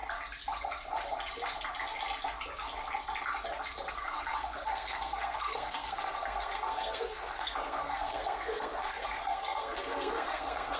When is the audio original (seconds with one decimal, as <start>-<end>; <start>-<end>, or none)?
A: 0.0-3.9